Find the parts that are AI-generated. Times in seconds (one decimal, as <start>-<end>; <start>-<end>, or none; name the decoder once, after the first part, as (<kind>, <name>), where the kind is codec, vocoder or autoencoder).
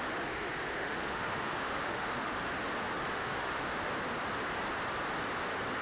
0.8-2.4 (autoencoder, DAC-VAE); 3.1-3.9